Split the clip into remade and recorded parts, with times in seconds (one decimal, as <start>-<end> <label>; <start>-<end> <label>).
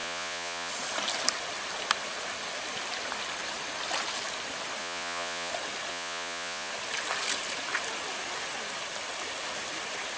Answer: 0.0-0.7 remade; 0.7-4.8 recorded; 4.8-5.5 remade; 5.5-5.9 recorded; 5.9-6.7 remade; 6.7-10.2 recorded